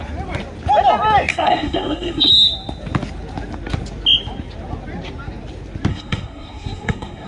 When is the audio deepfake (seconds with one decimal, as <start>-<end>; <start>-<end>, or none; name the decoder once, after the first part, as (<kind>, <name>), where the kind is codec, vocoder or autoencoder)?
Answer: 1.3-2.3 (codec, SNAC); 5.9-7.3